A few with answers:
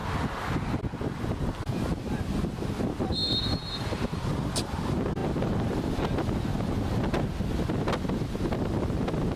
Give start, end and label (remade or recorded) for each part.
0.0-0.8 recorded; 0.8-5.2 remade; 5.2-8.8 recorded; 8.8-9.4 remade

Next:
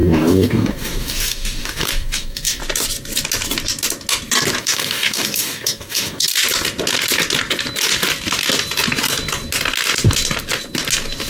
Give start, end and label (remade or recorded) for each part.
0.0-2.6 remade; 2.6-4.6 recorded; 4.6-6.3 remade; 6.3-11.3 recorded

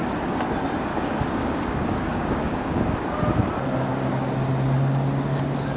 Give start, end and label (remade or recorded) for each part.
0.0-0.9 recorded; 0.9-2.8 remade; 2.8-3.9 recorded; 3.9-4.5 remade; 4.5-5.8 recorded

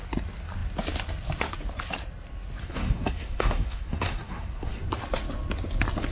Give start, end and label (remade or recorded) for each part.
0.0-2.6 recorded; 2.6-4.7 remade; 4.7-6.1 recorded

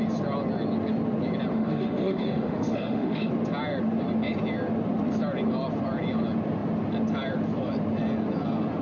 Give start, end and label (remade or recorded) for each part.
0.0-1.5 recorded; 1.5-3.3 remade; 3.3-8.8 recorded

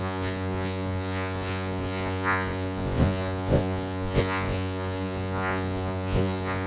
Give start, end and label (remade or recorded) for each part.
0.0-6.7 remade

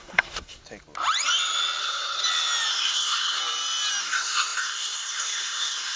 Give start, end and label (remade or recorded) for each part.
0.0-0.6 remade; 0.6-1.8 recorded; 1.8-2.2 remade; 2.2-2.7 recorded; 2.7-3.4 remade; 3.4-4.0 recorded; 4.0-6.0 remade

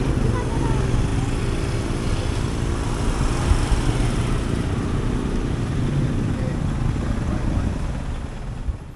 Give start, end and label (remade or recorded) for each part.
0.0-9.0 recorded